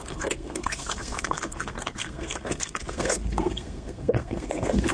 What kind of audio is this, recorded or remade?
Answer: remade